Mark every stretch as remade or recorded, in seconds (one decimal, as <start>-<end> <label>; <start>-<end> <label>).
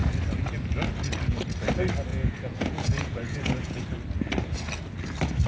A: 0.0-2.1 recorded; 2.1-3.8 remade; 3.8-5.5 recorded